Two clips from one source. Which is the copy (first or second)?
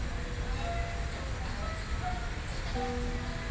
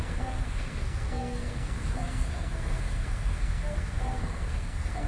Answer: second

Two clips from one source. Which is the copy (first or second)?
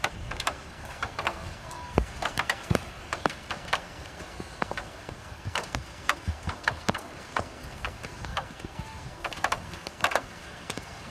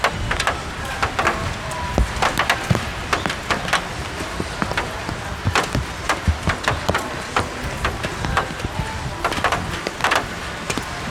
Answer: first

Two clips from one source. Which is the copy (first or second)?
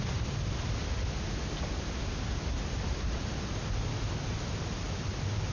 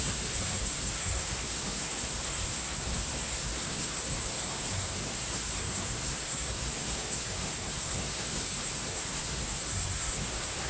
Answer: second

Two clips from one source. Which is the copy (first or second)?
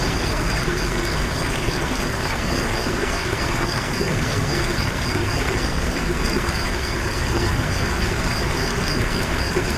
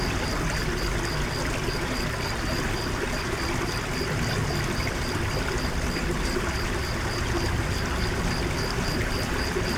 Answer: first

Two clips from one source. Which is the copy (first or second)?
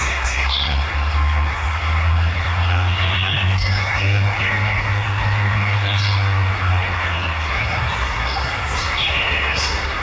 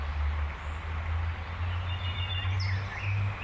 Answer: first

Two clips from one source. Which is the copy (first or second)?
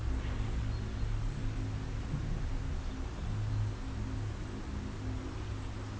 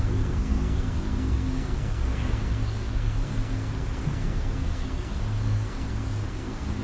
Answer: second